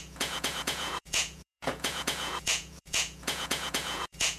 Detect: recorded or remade remade